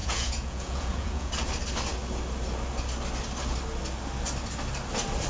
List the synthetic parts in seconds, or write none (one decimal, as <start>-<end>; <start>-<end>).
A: 0.0-1.3